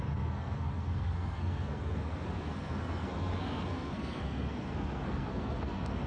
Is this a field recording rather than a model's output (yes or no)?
no